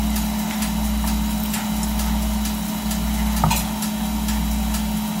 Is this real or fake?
real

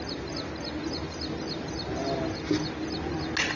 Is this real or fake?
real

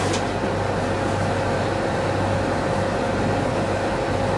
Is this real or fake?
real